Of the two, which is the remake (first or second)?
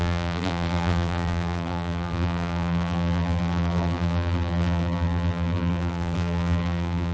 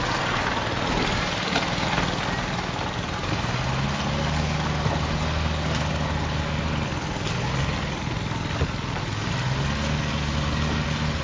first